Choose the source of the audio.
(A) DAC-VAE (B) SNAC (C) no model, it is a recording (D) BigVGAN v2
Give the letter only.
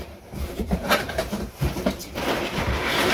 D